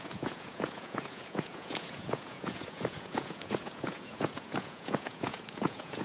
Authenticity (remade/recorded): remade